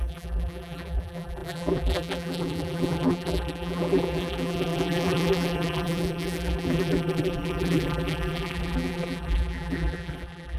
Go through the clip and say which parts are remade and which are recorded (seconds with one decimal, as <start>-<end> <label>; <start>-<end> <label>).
0.0-10.6 remade